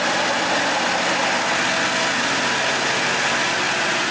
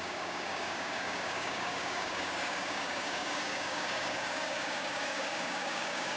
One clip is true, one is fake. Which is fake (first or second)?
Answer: second